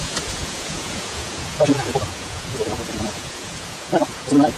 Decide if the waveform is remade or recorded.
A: remade